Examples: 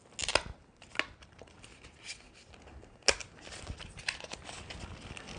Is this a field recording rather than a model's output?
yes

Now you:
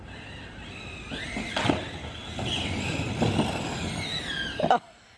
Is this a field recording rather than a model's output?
yes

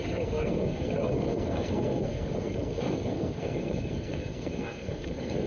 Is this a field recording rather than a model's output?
no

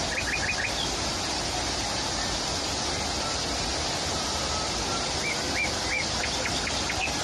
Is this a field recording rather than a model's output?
yes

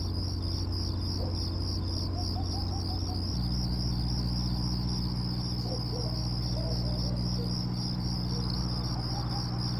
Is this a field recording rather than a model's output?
yes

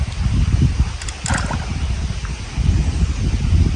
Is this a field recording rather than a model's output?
yes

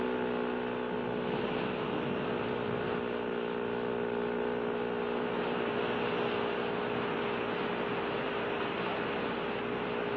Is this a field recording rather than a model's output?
yes